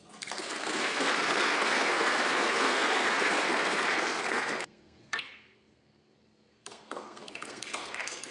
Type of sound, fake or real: fake